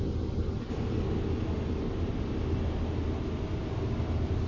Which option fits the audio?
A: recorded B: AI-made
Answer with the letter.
A